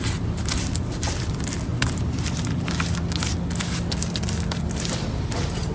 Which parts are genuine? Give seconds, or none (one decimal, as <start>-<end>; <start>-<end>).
0.0-5.7